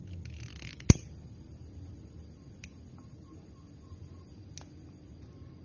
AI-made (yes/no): no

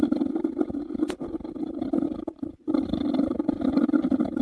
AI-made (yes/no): no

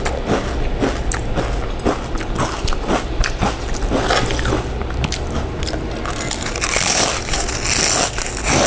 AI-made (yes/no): no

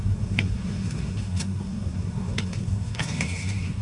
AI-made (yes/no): yes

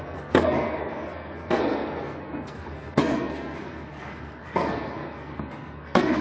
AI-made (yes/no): yes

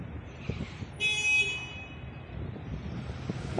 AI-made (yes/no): no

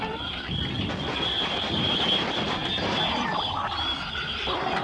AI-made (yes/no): no